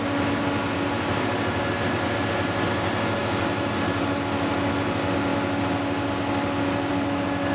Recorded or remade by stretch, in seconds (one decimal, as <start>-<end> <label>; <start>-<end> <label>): 0.0-7.5 recorded